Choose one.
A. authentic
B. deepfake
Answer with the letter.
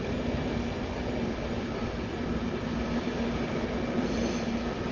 A